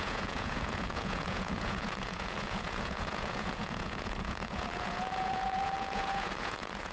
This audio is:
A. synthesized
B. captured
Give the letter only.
A